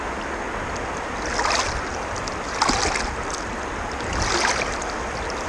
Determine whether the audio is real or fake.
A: real